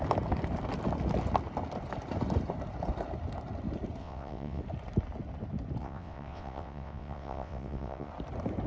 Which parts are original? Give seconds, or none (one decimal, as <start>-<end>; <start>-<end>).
0.0-4.0; 4.6-5.8; 8.1-8.7